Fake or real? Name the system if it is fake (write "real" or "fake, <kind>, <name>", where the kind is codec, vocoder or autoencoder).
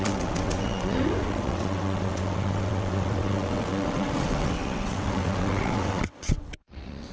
fake, vocoder, WaveNeXt